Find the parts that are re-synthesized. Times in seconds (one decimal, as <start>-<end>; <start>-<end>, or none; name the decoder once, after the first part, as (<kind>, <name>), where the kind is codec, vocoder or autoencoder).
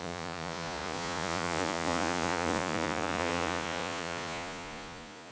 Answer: 0.0-5.3 (vocoder, Vocos)